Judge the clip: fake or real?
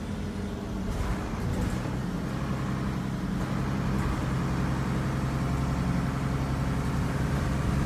real